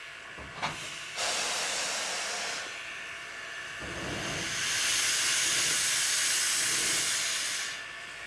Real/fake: real